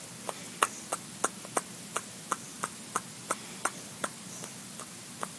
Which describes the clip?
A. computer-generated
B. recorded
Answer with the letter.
B